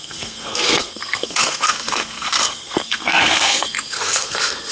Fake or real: fake